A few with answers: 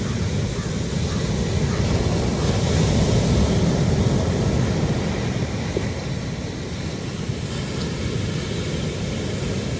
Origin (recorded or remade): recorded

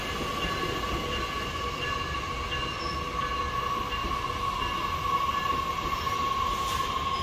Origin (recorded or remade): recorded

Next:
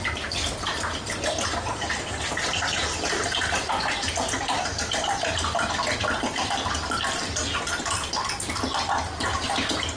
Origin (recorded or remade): recorded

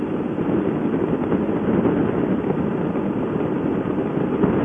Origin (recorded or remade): recorded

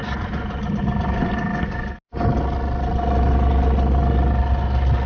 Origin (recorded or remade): recorded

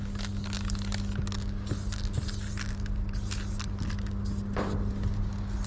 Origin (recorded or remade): recorded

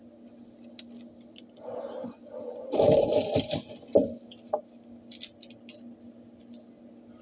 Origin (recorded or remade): recorded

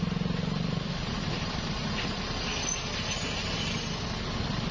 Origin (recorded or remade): recorded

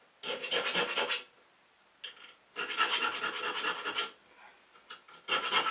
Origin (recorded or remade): recorded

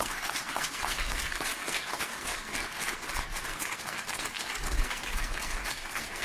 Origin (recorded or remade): remade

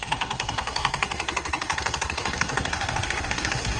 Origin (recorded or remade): remade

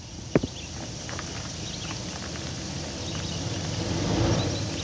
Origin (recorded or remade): recorded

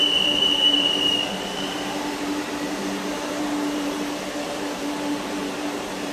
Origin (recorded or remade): remade